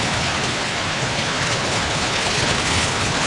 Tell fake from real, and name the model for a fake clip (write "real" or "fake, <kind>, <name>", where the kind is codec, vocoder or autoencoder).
fake, codec, HILCodec